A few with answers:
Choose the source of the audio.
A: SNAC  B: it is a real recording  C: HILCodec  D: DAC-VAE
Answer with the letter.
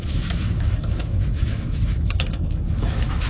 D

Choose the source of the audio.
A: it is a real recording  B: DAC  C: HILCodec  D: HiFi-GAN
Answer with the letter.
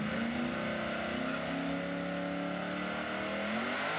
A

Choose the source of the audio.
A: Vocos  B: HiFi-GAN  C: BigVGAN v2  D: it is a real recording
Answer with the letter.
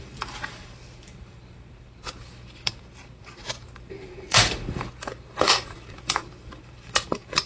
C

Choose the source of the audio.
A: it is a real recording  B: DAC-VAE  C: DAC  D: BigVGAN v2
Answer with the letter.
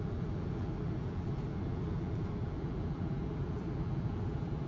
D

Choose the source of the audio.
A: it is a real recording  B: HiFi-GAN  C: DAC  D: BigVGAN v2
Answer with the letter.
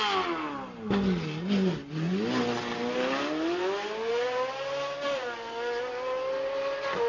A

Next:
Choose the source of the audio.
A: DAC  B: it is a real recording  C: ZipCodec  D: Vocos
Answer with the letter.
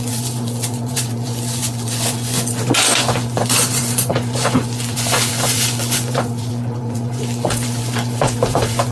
D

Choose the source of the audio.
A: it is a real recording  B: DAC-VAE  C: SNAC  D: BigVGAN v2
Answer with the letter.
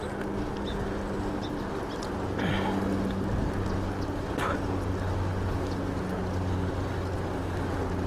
A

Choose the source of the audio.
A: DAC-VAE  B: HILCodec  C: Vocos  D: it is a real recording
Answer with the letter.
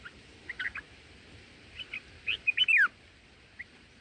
D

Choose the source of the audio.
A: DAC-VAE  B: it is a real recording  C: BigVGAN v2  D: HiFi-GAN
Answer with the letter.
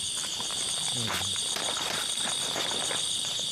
C